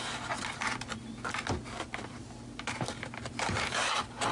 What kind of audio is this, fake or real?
real